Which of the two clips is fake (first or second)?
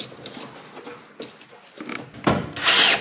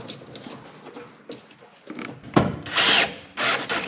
second